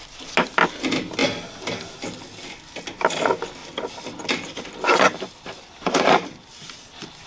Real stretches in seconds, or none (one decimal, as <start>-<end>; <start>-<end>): 0.0-3.6